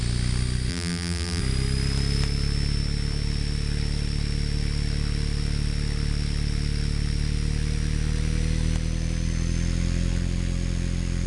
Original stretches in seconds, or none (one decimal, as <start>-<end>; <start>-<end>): 0.0-0.7; 1.4-11.3